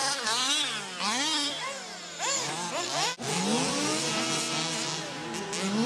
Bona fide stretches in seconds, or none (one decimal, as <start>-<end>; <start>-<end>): 0.0-5.9